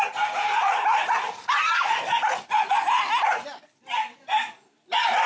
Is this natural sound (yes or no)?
yes